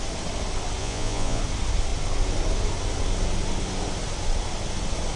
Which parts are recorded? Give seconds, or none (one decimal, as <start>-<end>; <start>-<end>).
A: 0.0-0.8; 1.4-5.2